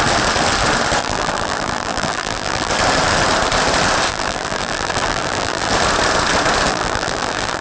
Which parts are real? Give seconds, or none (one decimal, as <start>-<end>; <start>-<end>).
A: 0.0-1.0; 2.7-4.1; 5.7-6.7